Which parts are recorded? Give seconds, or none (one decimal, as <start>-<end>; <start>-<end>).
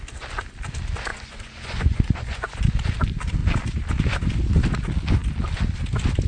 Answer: 0.0-1.1; 2.6-6.3